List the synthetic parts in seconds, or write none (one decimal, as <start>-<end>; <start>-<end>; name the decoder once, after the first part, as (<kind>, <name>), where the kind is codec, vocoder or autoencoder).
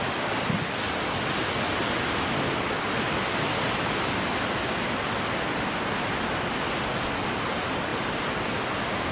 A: none